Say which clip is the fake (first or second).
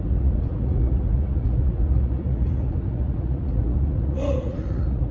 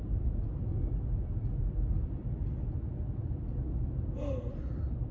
first